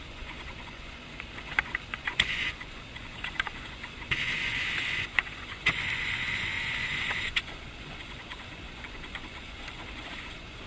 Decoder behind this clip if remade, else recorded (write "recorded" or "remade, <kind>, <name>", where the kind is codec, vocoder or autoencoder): remade, vocoder, Vocos